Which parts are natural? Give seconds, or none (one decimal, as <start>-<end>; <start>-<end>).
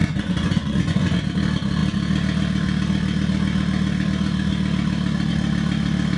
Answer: 1.2-6.2